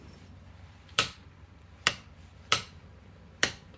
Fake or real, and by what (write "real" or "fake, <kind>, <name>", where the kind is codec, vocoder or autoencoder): fake, vocoder, BigVGAN v2